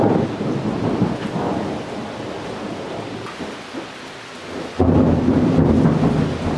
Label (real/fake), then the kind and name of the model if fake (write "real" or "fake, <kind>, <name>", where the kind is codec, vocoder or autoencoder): real